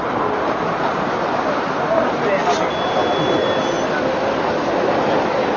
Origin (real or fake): real